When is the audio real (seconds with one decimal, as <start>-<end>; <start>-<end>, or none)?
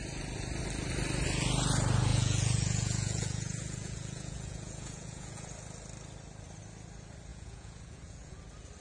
0.0-2.1; 5.5-7.3; 8.4-8.8